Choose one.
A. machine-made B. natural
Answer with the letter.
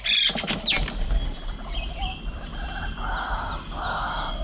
B